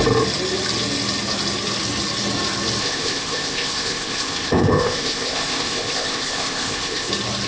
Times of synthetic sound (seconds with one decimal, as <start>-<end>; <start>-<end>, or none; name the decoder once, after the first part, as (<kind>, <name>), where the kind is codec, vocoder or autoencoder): 2.8-7.1 (codec, ZipCodec)

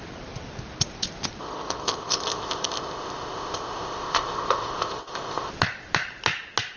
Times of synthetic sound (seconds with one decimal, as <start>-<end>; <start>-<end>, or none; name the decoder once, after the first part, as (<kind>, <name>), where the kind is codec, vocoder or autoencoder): 1.4-5.5 (codec, ZipCodec)

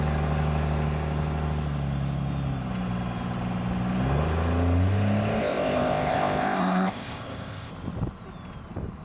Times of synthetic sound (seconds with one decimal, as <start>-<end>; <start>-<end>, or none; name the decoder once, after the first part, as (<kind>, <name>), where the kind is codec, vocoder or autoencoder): 5.4-7.7 (codec, ZipCodec)

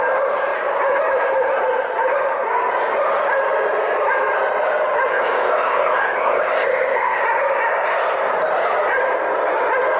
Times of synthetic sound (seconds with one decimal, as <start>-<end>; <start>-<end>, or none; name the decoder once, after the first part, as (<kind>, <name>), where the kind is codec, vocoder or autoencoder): 5.1-7.2 (codec, ZipCodec)

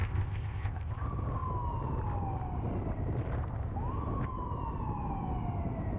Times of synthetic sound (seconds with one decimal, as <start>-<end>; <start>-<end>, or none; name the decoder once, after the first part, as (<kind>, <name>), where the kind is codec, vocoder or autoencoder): 0.0-0.9 (codec, ZipCodec)